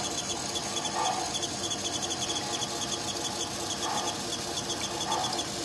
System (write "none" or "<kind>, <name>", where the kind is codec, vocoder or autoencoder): none